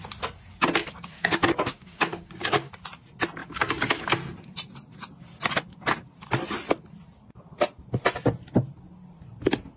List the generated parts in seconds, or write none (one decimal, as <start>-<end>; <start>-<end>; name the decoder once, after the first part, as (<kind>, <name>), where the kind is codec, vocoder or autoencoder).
0.8-2.7 (codec, DAC); 3.4-4.0